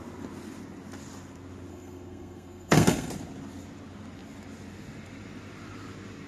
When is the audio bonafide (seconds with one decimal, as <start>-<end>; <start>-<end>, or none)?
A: 0.0-1.7; 3.1-6.3